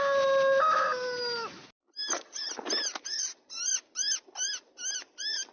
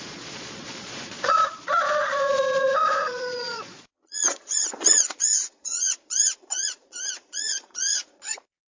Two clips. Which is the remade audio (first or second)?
second